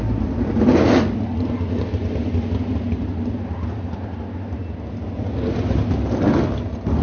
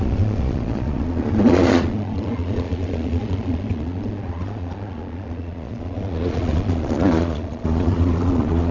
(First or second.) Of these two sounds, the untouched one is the first